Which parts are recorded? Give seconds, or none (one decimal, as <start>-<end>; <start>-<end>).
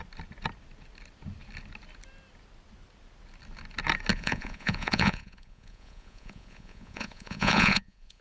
0.0-4.1